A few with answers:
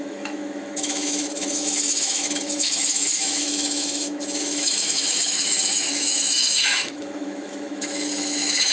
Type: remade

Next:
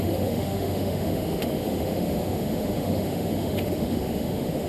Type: remade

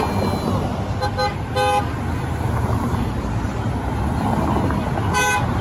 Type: recorded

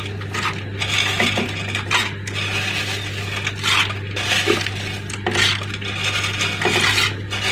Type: recorded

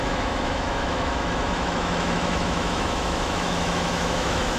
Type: remade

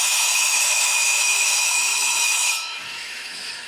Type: remade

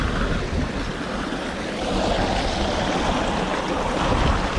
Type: recorded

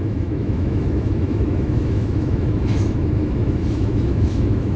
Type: remade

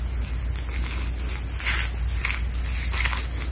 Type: recorded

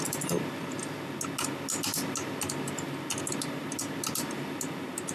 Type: recorded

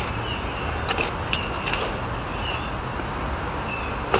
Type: recorded